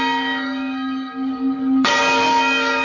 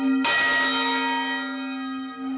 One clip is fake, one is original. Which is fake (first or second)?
first